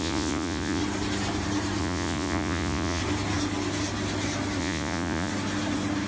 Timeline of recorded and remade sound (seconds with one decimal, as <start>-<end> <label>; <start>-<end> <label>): 0.0-0.8 remade; 0.8-1.8 recorded; 1.8-3.0 remade; 3.0-4.6 recorded; 4.6-5.3 remade; 5.3-6.1 recorded